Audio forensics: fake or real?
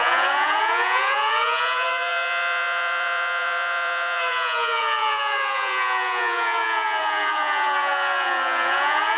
fake